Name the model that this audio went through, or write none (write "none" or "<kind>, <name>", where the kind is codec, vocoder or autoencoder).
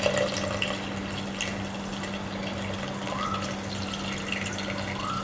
vocoder, BigVGAN v2